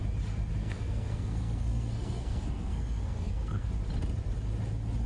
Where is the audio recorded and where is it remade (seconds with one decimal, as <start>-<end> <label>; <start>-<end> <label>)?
0.0-0.6 recorded; 0.6-3.7 remade; 3.7-5.1 recorded